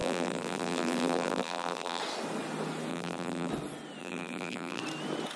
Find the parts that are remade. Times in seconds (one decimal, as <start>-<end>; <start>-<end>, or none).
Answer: 0.0-2.0; 2.9-3.5; 4.0-4.8